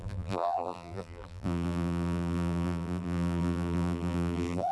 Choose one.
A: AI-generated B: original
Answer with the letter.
A